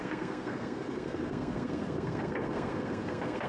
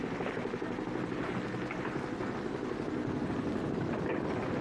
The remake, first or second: first